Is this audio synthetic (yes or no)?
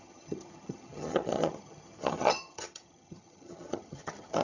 yes